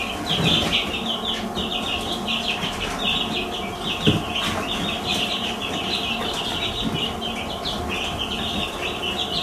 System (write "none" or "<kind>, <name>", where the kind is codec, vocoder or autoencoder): none